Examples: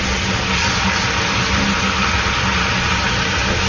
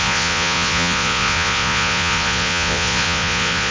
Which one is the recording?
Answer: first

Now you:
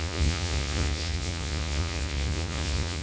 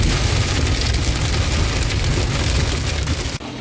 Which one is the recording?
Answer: second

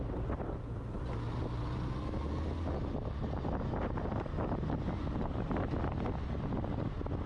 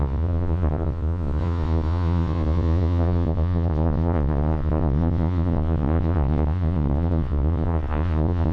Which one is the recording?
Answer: first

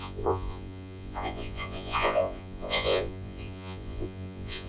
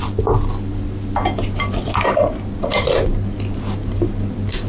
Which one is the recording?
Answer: second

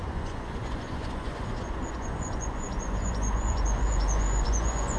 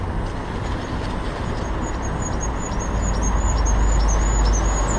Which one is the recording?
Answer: second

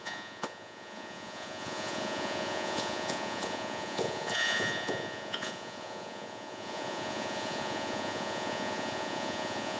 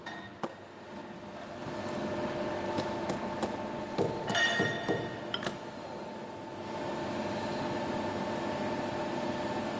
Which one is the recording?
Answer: second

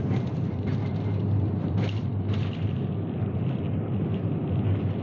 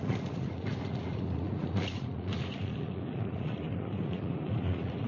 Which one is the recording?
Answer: first